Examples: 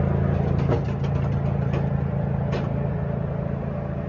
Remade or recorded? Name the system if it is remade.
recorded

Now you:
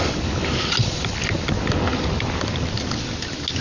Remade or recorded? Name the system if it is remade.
recorded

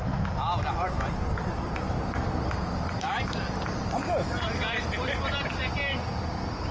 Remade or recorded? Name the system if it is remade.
recorded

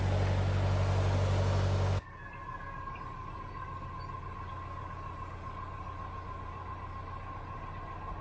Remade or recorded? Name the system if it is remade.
recorded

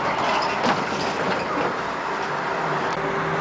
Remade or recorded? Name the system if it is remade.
recorded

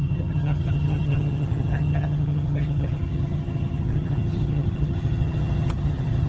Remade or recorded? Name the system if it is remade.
remade, vocoder, HiFi-GAN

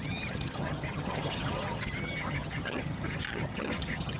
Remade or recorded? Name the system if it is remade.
remade, vocoder, HiFi-GAN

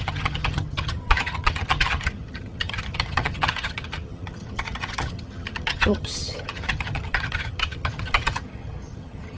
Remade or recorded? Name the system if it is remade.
remade, vocoder, HiFi-GAN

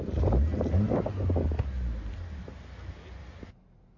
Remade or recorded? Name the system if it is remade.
recorded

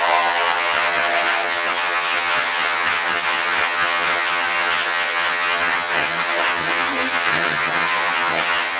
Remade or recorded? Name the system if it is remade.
remade, vocoder, HiFi-GAN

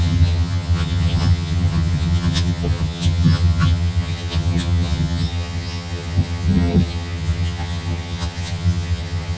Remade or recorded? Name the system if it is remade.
remade, vocoder, HiFi-GAN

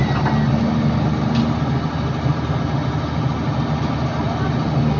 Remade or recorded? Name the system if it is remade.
recorded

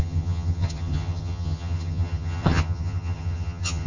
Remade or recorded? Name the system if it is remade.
remade, vocoder, HiFi-GAN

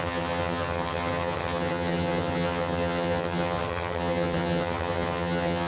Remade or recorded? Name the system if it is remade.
remade, vocoder, HiFi-GAN